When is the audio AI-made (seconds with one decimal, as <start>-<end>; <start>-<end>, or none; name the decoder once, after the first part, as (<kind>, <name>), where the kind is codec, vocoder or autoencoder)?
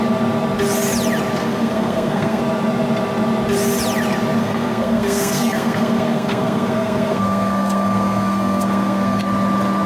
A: 1.4-2.4 (codec, SNAC); 4.4-9.2